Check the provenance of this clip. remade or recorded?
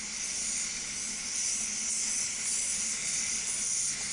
recorded